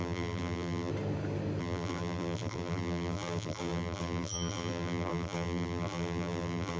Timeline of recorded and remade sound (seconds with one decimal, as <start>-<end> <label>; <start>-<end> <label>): 0.0-0.9 remade; 0.9-1.6 recorded; 1.6-6.8 remade